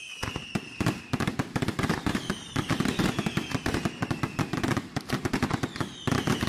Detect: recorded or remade remade